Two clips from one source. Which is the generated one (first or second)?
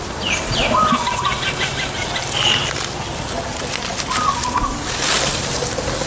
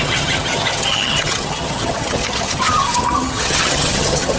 second